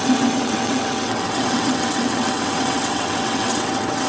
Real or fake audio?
fake